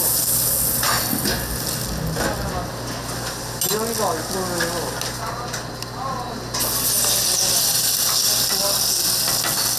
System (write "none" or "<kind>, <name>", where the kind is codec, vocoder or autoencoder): none